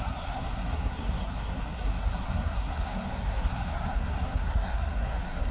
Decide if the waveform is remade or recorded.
remade